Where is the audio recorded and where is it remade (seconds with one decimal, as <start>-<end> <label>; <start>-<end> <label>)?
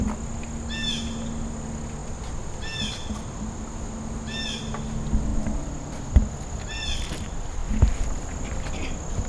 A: 0.0-9.3 recorded